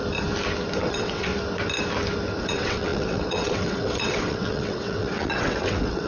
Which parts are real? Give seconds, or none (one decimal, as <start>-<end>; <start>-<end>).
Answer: 0.0-0.8; 1.3-2.4